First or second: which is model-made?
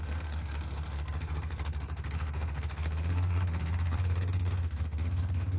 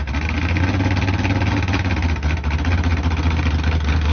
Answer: first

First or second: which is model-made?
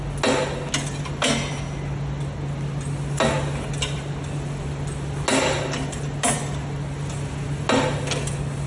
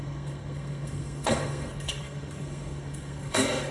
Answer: second